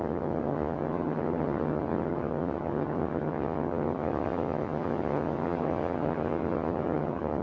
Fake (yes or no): yes